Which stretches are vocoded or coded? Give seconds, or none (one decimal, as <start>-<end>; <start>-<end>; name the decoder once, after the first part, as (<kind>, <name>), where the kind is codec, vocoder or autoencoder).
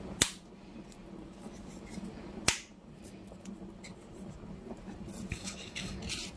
5.3-6.0 (codec, DAC)